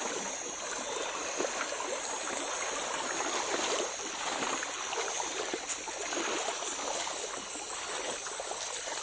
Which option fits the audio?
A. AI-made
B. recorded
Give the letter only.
B